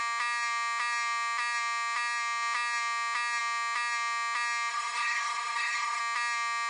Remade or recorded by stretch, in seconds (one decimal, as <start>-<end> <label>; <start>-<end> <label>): 0.0-4.7 recorded; 4.7-6.0 remade; 6.0-6.7 recorded